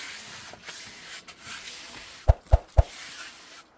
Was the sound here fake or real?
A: real